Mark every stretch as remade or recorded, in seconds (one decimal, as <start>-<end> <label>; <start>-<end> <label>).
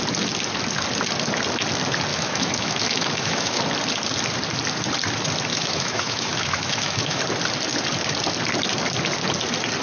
0.0-2.1 recorded; 2.1-3.6 remade; 3.6-5.5 recorded; 5.5-7.2 remade; 7.2-9.8 recorded